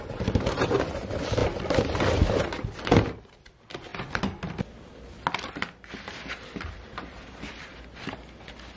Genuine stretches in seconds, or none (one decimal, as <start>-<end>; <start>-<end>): 0.0-8.8